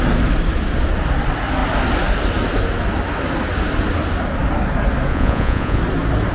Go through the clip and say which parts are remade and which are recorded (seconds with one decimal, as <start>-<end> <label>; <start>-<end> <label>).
0.0-5.1 recorded; 5.1-5.8 remade; 5.8-6.3 recorded